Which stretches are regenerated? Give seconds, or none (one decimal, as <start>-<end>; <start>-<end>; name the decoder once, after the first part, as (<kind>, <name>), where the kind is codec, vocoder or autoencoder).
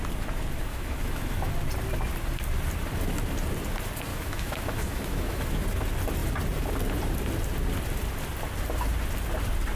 0.7-1.5 (autoencoder, DAC-VAE); 4.1-5.6